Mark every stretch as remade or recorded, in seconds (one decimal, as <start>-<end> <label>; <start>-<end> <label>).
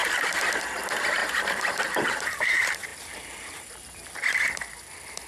0.0-0.6 recorded; 0.6-5.3 remade